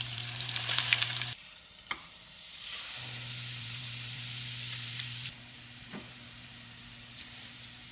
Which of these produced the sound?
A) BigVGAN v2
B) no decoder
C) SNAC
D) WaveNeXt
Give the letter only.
A